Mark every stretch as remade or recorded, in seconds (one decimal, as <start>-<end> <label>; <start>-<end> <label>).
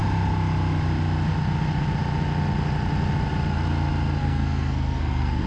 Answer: 0.0-4.2 recorded; 4.2-5.5 remade